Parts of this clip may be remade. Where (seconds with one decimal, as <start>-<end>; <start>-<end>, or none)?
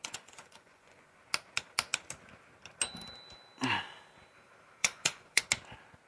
0.0-1.2; 4.8-5.4